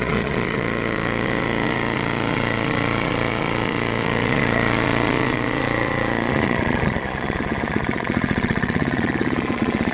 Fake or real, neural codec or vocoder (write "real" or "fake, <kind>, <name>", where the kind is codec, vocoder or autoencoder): fake, vocoder, Vocos